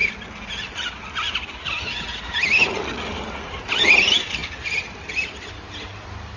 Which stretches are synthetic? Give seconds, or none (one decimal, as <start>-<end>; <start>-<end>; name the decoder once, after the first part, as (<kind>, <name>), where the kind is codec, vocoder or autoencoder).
none